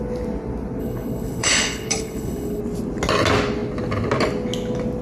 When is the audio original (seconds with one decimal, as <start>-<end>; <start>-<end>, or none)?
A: 0.0-0.8; 2.6-5.0